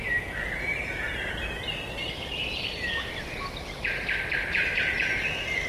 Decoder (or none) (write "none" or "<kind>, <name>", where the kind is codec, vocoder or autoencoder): none